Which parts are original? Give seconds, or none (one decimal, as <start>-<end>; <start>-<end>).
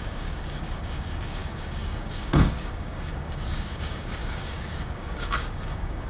none